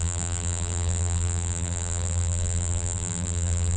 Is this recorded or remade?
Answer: remade